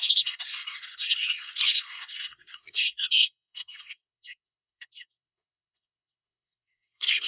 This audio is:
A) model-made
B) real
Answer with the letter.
A